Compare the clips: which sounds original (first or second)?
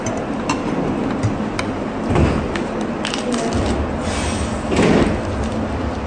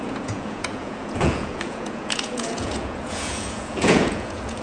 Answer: first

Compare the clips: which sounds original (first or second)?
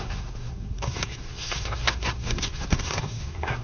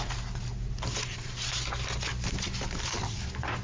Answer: second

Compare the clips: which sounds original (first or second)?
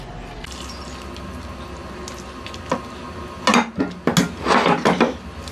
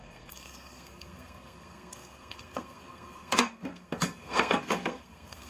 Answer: first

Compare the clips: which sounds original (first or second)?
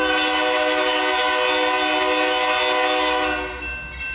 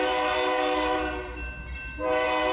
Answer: first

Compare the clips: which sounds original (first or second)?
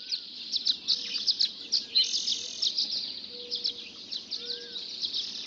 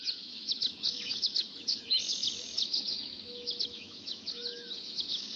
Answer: first